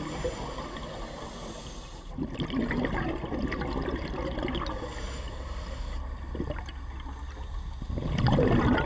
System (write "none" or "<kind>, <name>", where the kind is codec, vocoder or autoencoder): none